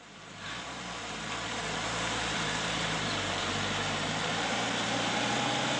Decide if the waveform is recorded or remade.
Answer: remade